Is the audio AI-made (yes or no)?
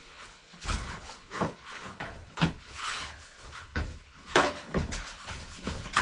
yes